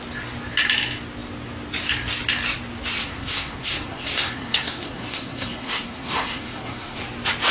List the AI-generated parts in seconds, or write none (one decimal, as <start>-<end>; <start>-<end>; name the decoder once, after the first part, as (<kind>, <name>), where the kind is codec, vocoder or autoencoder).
3.0-7.0 (codec, SNAC)